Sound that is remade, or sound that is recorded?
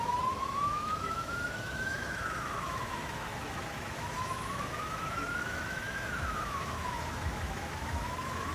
remade